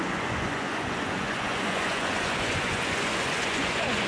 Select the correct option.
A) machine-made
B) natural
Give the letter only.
A